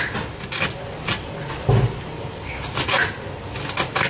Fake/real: real